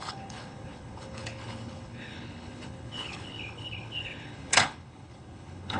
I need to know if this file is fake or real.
fake